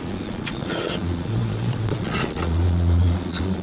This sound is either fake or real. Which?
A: fake